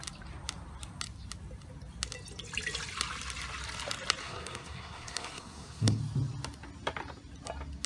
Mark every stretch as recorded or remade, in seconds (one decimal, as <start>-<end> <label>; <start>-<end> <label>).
0.0-4.2 recorded; 4.2-6.0 remade; 6.0-7.9 recorded